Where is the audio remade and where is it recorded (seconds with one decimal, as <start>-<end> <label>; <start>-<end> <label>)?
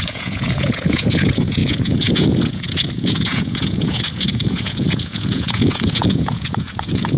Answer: 0.0-7.2 remade